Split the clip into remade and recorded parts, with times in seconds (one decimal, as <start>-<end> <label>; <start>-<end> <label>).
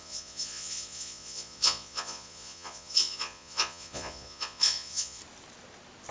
0.0-5.2 remade; 5.2-6.1 recorded